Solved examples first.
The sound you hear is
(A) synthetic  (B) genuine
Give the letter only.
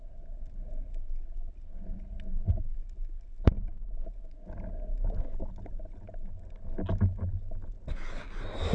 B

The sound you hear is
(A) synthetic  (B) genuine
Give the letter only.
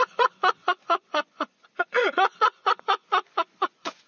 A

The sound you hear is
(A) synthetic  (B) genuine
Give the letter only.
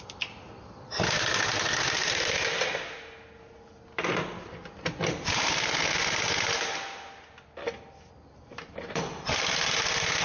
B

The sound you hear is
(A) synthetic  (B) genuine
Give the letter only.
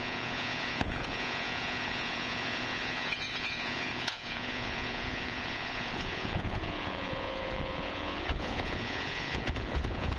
A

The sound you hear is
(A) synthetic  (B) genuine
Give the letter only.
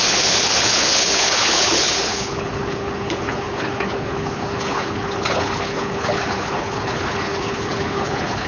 A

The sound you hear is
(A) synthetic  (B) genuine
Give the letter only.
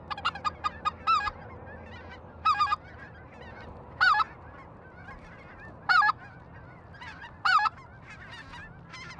B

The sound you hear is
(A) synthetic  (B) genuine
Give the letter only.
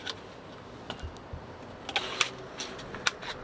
B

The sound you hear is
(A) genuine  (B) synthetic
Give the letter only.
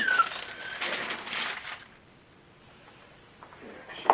A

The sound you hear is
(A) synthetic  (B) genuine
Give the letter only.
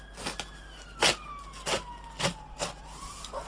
B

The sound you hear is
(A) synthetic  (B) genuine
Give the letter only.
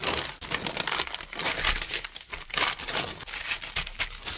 B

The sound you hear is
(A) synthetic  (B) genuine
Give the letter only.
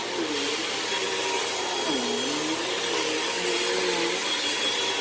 B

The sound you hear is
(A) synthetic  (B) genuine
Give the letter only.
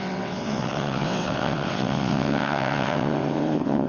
A